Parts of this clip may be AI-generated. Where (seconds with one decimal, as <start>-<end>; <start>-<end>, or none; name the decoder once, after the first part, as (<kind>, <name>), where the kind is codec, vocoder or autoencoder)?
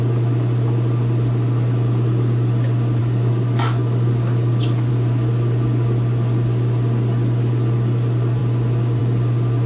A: 3.0-4.9 (codec, DAC)